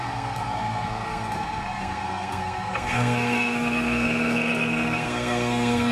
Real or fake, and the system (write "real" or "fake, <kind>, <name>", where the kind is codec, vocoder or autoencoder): fake, codec, SNAC